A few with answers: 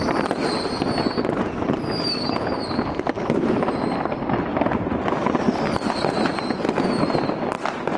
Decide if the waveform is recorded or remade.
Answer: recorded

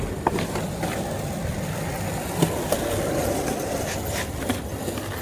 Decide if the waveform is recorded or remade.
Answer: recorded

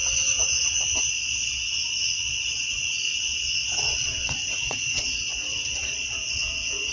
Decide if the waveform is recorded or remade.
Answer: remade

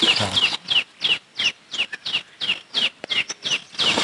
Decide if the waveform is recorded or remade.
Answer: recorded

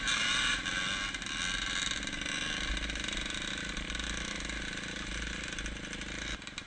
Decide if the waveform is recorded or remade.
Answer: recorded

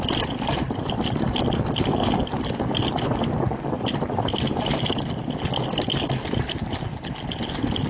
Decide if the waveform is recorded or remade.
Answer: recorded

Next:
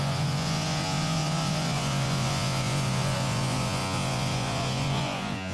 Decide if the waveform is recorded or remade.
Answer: remade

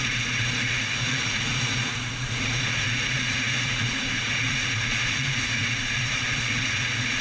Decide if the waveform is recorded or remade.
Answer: remade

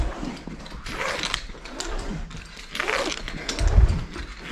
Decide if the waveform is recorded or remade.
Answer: recorded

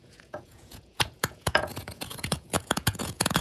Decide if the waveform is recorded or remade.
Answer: remade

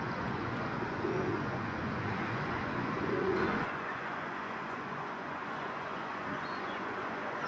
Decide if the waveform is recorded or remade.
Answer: remade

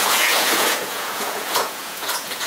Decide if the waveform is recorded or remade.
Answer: remade